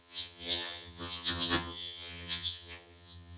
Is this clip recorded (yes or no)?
no